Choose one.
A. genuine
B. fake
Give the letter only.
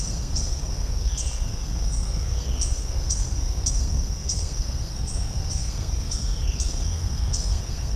B